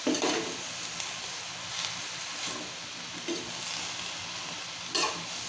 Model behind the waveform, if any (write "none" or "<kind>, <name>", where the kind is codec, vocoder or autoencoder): none